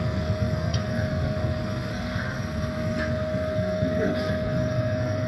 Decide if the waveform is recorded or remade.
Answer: remade